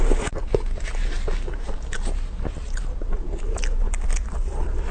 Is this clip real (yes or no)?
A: yes